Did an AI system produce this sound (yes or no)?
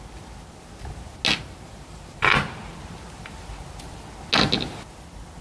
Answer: no